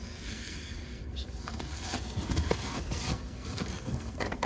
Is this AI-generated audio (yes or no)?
yes